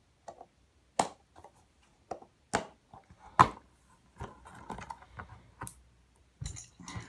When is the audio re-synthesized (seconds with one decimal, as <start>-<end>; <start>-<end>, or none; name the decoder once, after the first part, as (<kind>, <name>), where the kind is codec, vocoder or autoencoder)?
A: none